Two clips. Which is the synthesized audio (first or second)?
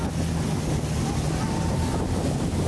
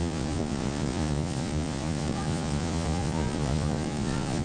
second